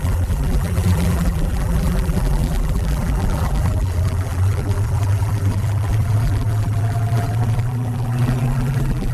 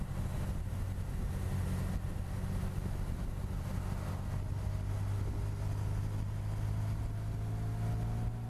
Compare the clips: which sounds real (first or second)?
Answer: second